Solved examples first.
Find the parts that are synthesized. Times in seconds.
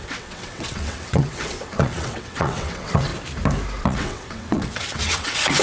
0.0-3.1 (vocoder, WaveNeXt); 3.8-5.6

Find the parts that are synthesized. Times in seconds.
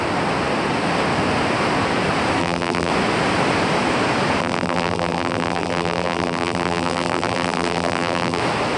2.4-2.9 (vocoder, BigVGAN v2); 4.4-8.4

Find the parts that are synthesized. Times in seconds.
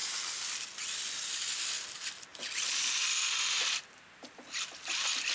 none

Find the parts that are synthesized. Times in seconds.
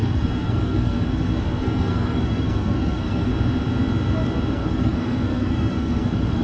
0.0-3.3 (codec, SNAC); 4.5-6.4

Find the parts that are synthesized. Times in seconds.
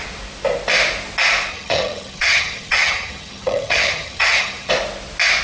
1.5-4.7 (vocoder, HiFi-GAN)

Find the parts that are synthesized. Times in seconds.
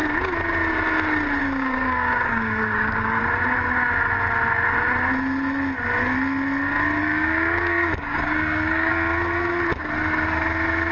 1.4-3.2 (codec, DAC); 7.0-8.9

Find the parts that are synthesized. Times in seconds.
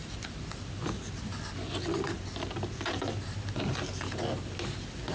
none